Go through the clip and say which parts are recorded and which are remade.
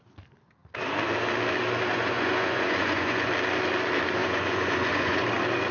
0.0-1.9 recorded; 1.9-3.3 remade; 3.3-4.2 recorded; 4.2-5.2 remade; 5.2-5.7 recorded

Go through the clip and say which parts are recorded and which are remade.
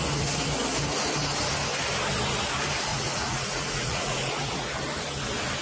0.0-2.9 recorded; 2.9-4.4 remade; 4.4-5.6 recorded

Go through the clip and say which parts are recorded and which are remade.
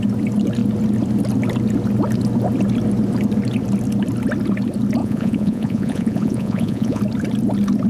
0.0-5.0 recorded; 5.0-7.0 remade; 7.0-7.9 recorded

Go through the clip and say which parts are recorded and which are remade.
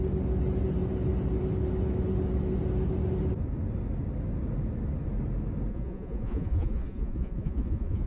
0.0-5.7 recorded; 5.7-8.1 remade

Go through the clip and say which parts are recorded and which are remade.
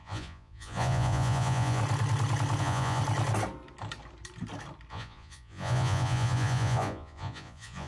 0.0-1.8 remade; 1.8-2.6 recorded; 2.6-3.0 remade; 3.0-4.9 recorded; 4.9-7.9 remade